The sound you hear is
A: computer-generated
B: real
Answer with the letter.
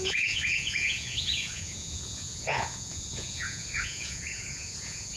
A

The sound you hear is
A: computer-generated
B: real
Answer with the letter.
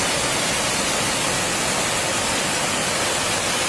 B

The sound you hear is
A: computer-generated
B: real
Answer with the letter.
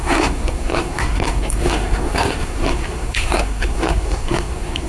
A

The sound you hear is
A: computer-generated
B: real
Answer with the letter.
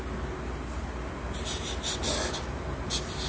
B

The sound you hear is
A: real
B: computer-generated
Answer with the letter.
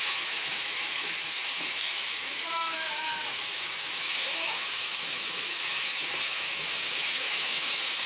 B